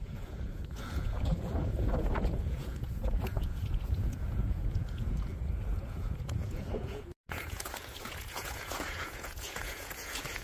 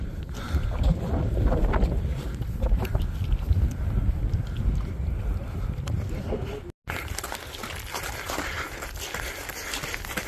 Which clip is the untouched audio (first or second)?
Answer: second